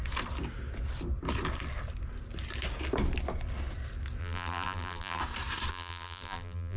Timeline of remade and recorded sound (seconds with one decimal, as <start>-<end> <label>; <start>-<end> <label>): 0.0-4.2 recorded; 4.2-5.2 remade; 5.2-5.7 recorded; 5.7-6.8 remade